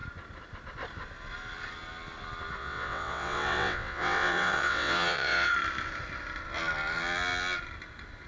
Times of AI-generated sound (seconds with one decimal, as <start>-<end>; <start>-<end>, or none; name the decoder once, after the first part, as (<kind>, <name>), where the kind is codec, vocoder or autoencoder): 2.6-5.5 (vocoder, WaveNeXt)